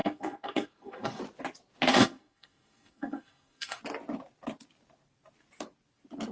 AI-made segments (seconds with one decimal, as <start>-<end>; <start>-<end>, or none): 0.0-1.2; 1.9-3.8